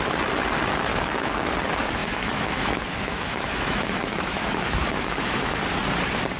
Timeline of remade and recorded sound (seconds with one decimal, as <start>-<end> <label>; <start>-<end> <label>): 0.0-0.9 recorded; 0.9-1.5 remade; 1.5-2.0 recorded; 2.0-5.6 remade; 5.6-6.4 recorded